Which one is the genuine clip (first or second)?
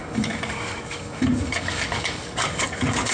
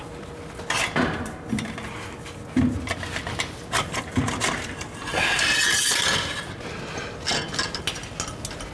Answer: second